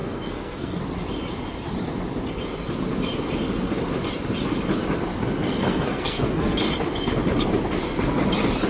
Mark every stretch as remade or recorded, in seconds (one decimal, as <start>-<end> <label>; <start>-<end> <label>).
0.0-0.8 remade; 0.8-5.6 recorded; 5.6-6.6 remade; 6.6-8.7 recorded